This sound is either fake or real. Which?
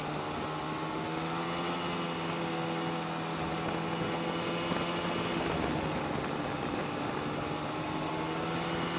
real